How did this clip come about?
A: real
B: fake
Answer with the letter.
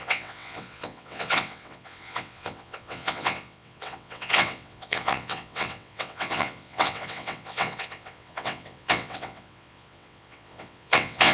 B